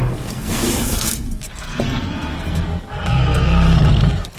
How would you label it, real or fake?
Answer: fake